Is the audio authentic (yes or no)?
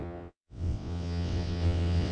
no